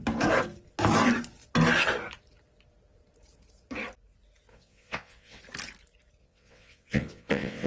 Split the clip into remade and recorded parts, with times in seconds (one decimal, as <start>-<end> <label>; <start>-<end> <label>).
0.0-4.5 recorded; 4.5-5.4 remade; 5.4-6.2 recorded; 6.2-7.7 remade